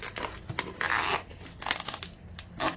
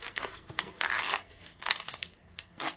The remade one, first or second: second